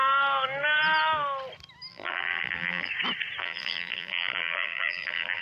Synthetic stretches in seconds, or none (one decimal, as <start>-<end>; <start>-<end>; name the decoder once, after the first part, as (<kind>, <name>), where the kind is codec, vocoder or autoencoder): 1.9-2.9 (vocoder, BigVGAN v2); 3.4-5.4